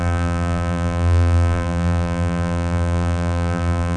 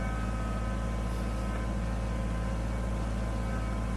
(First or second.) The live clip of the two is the second